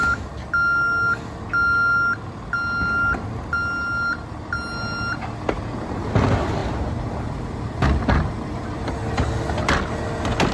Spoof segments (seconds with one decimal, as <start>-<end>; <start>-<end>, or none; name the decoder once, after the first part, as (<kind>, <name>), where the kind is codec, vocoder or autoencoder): none